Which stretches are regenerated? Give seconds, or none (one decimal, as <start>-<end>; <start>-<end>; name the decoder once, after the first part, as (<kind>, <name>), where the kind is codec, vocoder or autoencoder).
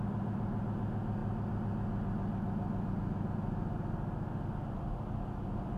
none